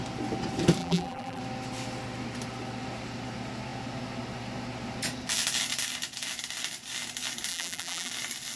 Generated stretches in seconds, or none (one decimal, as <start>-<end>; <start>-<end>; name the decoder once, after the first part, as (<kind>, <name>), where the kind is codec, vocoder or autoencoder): 0.8-1.4 (vocoder, BigVGAN v2); 7.5-8.1